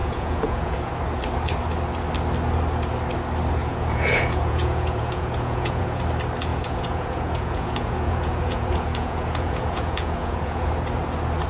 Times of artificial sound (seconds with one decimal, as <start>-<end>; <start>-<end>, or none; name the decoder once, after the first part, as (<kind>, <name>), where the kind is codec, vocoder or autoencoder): 0.0-0.9 (vocoder, Vocos); 3.6-6.0; 6.5-10.7